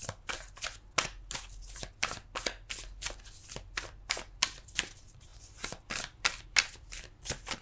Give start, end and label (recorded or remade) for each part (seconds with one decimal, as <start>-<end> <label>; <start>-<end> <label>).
0.0-5.3 recorded; 5.3-5.8 remade; 5.8-7.6 recorded